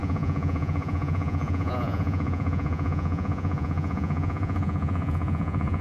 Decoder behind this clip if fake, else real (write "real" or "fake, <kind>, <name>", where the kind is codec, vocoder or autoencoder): fake, vocoder, Vocos